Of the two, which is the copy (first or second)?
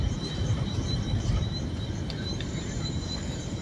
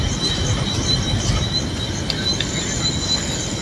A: first